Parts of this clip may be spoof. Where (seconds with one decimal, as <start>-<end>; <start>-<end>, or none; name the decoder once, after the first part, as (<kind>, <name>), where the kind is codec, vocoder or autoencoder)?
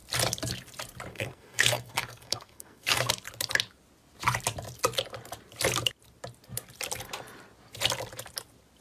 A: 1.1-3.1 (codec, SNAC)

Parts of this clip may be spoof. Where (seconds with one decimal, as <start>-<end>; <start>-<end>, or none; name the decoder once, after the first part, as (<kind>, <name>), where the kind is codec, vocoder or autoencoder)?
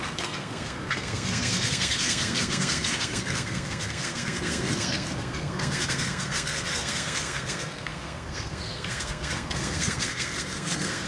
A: 0.0-11.1 (codec, SNAC)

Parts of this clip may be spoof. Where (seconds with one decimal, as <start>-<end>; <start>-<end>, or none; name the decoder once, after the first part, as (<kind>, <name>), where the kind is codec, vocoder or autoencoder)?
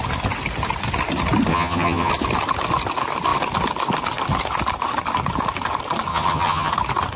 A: 1.5-2.1 (vocoder, HiFi-GAN); 6.1-6.7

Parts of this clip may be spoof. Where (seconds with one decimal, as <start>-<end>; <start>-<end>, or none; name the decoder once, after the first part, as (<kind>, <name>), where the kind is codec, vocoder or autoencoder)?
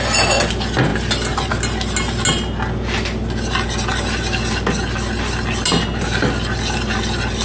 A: none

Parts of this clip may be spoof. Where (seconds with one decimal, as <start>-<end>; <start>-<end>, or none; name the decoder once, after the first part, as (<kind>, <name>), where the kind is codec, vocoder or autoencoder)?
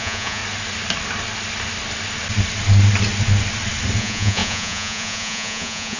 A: 0.0-0.4 (vocoder, Vocos); 4.0-6.0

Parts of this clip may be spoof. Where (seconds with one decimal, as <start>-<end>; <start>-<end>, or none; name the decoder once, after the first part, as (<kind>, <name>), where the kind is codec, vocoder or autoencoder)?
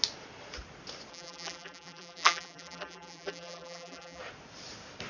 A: 1.1-4.2 (vocoder, BigVGAN v2)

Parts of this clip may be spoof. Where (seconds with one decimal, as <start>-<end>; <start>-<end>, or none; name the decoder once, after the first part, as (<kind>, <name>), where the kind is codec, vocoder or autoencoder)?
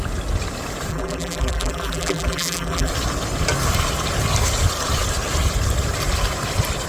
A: 0.9-2.9 (vocoder, BigVGAN v2)